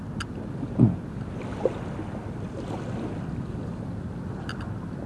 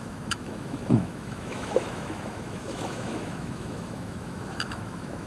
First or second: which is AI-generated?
second